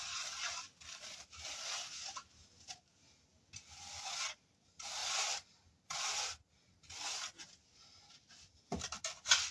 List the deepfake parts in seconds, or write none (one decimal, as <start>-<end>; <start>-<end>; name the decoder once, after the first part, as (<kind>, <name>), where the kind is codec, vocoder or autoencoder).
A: none